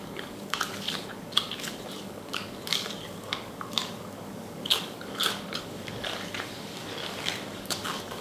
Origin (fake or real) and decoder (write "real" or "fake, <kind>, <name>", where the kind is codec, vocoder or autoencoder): fake, codec, DAC